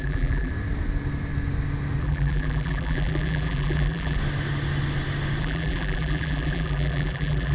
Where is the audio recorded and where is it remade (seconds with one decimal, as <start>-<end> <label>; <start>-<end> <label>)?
0.0-0.5 remade; 0.5-2.0 recorded; 2.0-4.2 remade; 4.2-5.4 recorded; 5.4-7.5 remade